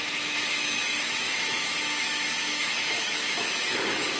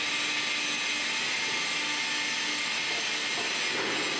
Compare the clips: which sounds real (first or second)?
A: second